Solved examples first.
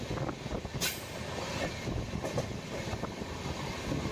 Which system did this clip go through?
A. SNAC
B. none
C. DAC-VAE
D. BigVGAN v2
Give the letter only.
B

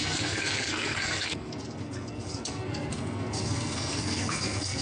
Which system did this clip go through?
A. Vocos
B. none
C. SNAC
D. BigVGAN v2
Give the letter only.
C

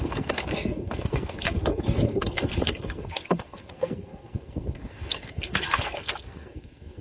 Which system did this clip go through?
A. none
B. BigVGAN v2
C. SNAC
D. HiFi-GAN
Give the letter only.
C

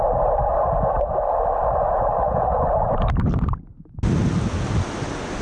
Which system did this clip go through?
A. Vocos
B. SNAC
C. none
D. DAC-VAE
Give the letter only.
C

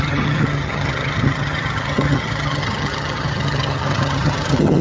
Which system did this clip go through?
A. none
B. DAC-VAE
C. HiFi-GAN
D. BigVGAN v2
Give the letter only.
C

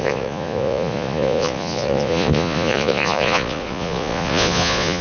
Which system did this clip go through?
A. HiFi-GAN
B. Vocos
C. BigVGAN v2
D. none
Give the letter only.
B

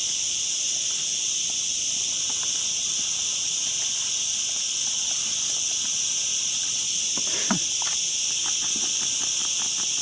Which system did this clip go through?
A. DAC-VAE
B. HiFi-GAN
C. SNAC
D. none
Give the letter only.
D